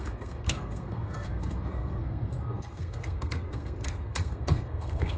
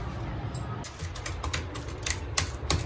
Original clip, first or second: second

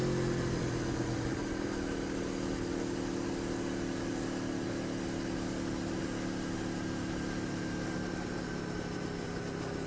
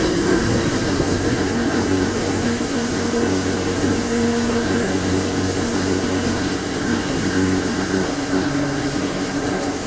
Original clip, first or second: first